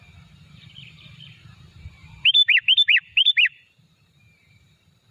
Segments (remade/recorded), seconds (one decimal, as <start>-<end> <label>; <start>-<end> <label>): 0.0-5.1 remade